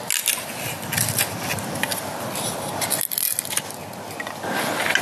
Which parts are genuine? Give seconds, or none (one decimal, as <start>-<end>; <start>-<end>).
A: 0.0-5.0